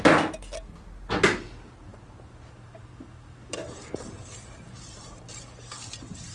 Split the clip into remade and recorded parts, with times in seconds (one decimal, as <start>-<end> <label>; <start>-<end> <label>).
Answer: 0.0-1.9 recorded; 1.9-5.2 remade; 5.2-6.3 recorded